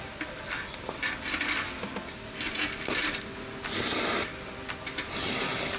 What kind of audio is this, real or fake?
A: real